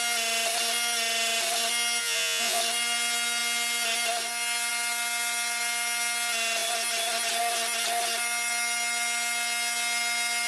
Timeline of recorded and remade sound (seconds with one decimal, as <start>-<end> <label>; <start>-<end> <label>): 0.0-2.0 recorded; 2.0-2.6 remade; 2.6-10.5 recorded